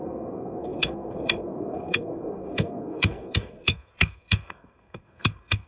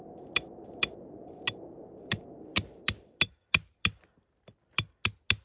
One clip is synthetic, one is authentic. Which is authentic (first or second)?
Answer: second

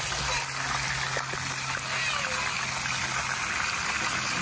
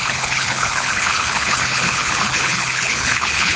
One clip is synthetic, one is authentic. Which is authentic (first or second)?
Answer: first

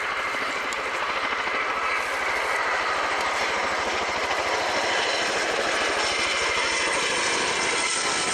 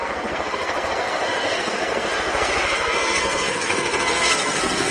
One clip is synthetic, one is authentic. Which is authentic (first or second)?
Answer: first